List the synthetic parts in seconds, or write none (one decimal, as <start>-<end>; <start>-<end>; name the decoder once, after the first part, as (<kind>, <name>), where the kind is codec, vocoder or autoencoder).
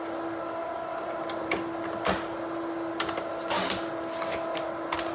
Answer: 0.6-1.5 (vocoder, BigVGAN v2)